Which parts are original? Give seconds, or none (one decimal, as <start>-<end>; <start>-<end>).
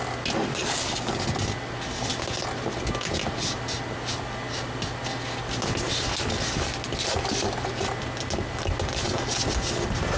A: 0.0-0.5; 1.2-10.2